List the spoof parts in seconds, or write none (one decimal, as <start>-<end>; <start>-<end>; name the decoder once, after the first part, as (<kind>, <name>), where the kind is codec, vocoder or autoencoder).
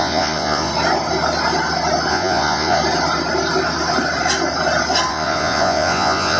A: 0.0-0.7 (vocoder, Vocos); 2.1-2.8; 5.1-6.4